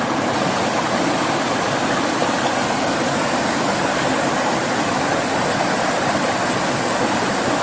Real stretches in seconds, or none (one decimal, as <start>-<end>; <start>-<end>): 0.0-7.6